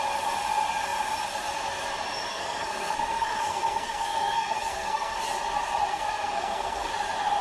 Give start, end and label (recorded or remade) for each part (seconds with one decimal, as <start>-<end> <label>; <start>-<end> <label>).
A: 0.0-2.3 recorded; 2.3-5.2 remade; 5.2-5.9 recorded; 5.9-6.9 remade; 6.9-7.4 recorded